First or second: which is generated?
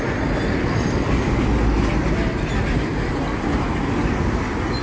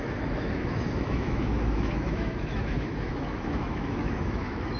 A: second